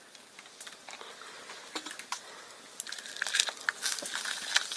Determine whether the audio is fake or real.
real